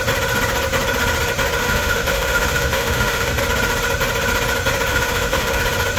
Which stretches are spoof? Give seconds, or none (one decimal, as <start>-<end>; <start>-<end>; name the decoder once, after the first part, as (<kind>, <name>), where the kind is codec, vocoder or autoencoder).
1.6-3.4 (autoencoder, DAC-VAE); 4.9-5.6